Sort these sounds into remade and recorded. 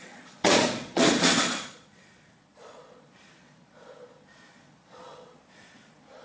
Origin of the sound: remade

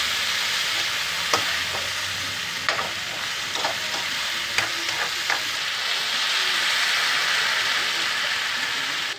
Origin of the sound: recorded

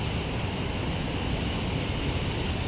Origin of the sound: recorded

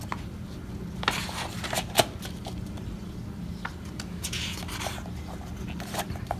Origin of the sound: recorded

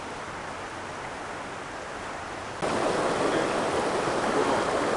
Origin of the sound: recorded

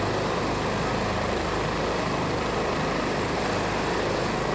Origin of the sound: recorded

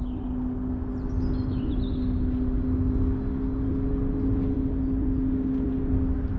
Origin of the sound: recorded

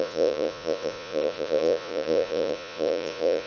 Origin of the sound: remade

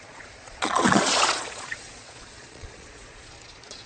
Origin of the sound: remade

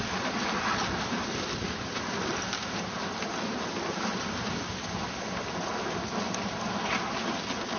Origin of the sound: recorded